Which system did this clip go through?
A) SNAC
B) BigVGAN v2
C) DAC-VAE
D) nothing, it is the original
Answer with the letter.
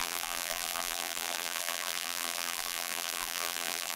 B